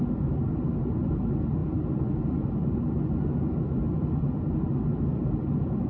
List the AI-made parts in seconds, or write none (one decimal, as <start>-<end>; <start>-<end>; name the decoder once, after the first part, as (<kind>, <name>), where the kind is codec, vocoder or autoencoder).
none